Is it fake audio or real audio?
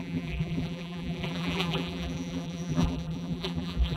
fake